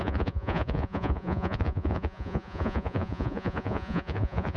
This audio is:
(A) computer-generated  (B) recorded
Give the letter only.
A